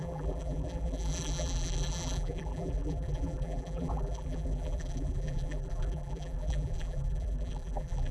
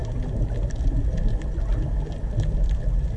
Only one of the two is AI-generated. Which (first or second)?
first